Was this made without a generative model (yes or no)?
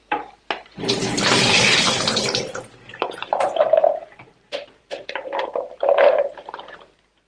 no